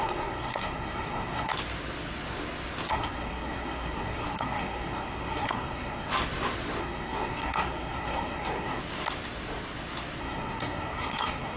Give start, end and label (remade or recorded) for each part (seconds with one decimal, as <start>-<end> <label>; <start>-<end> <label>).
0.0-1.5 remade; 1.5-2.9 recorded; 2.9-6.1 remade; 6.1-6.8 recorded; 6.8-8.8 remade; 8.8-10.2 recorded; 10.2-11.6 remade